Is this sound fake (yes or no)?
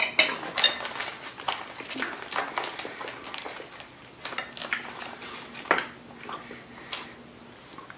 no